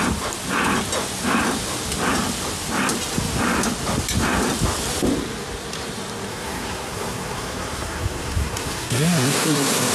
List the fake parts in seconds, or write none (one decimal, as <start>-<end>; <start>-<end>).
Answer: 6.3-9.9